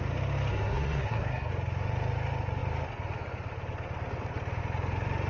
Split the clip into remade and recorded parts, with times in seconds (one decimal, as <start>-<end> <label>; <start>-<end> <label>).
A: 0.0-0.5 recorded; 0.5-1.5 remade; 1.5-5.3 recorded